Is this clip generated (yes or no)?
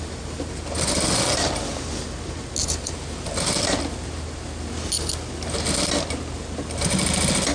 no